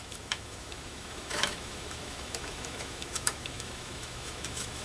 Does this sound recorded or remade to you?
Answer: remade